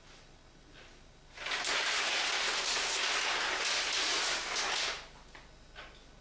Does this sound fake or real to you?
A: real